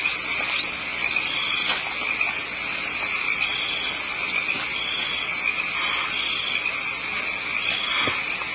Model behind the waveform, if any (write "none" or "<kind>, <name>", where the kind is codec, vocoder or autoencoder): none